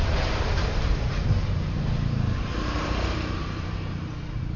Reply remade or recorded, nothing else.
remade